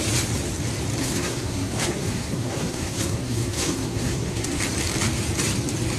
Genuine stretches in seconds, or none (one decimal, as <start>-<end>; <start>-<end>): 0.0-1.0; 4.6-6.0